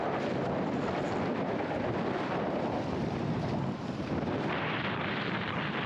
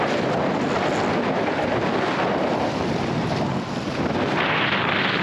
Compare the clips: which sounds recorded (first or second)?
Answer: second